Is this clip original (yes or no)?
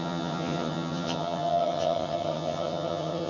no